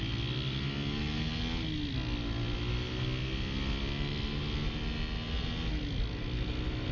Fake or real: real